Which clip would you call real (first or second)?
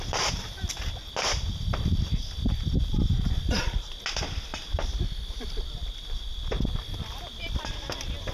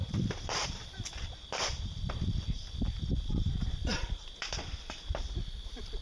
first